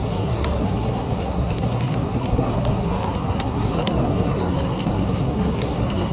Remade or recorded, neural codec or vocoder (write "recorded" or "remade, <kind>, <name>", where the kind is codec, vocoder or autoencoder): remade, codec, SNAC